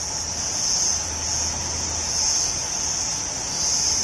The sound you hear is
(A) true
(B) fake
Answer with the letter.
A